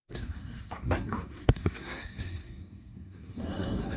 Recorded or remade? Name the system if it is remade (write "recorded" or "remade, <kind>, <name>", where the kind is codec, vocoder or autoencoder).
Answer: remade, codec, SNAC